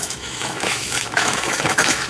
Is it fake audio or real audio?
fake